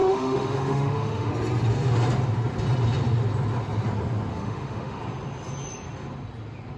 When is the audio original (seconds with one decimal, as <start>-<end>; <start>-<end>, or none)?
1.3-4.3; 5.0-6.8